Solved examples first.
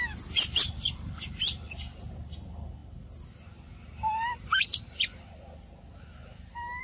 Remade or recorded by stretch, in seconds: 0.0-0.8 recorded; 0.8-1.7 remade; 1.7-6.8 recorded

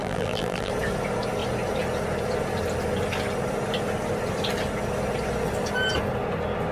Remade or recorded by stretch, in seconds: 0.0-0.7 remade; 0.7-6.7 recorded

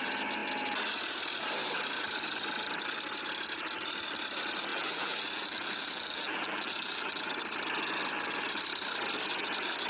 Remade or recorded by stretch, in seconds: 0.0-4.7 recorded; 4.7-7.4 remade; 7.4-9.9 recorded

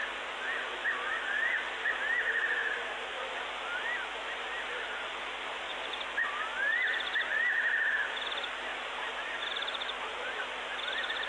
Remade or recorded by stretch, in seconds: 0.0-2.6 recorded; 2.6-3.1 remade; 3.1-5.7 recorded; 5.7-6.3 remade; 6.3-8.7 recorded; 8.7-10.4 remade; 10.4-11.3 recorded

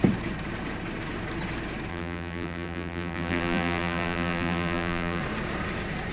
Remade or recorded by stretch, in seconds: 0.0-1.9 recorded; 1.9-5.2 remade; 5.2-6.1 recorded

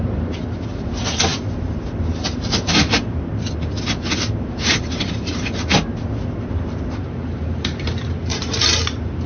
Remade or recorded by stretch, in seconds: 0.0-9.3 remade

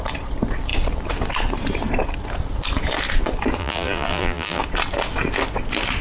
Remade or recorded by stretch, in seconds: 0.0-3.6 recorded; 3.6-4.6 remade; 4.6-6.0 recorded